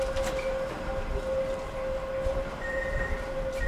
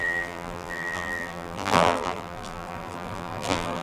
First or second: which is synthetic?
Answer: second